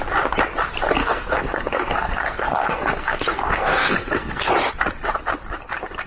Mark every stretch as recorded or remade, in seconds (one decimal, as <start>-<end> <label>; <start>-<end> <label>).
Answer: 0.0-1.0 recorded; 1.0-4.5 remade; 4.5-6.1 recorded